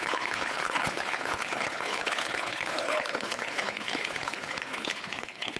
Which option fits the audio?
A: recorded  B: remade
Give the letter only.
B